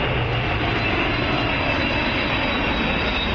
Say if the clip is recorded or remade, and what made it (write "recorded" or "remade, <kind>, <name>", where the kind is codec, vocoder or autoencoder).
recorded